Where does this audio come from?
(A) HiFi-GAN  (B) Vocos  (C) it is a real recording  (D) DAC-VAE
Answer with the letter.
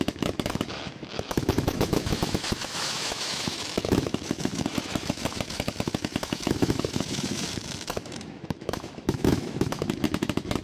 D